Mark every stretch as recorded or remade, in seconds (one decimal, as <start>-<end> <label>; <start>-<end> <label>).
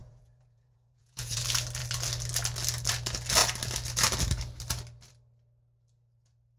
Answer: 0.0-1.4 remade; 1.4-6.6 recorded